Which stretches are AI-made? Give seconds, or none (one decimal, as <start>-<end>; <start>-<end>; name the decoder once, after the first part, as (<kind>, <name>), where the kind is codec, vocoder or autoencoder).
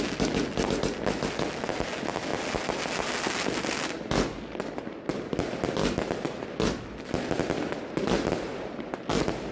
none